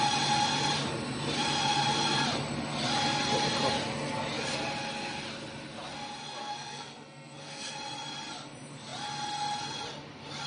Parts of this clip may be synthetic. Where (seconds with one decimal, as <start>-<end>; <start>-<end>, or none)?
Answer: 6.4-7.7